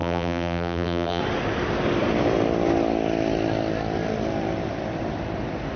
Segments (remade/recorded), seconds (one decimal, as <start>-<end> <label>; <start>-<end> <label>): 0.0-1.2 remade; 1.2-5.8 recorded